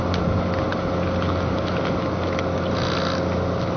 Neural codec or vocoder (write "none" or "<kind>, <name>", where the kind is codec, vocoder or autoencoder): none